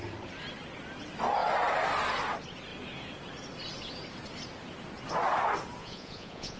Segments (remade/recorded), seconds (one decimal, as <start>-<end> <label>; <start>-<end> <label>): 0.0-5.8 recorded; 5.8-6.6 remade